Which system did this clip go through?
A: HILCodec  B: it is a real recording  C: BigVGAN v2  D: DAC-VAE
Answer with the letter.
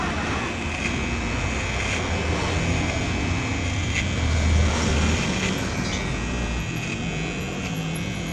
B